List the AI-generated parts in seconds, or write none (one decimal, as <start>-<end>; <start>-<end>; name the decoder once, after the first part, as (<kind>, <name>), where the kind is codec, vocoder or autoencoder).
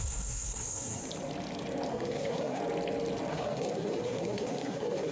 0.0-1.0 (codec, SNAC); 1.9-2.6; 3.3-5.1